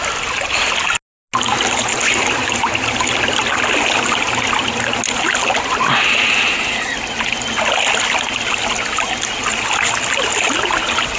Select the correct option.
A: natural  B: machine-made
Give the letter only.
A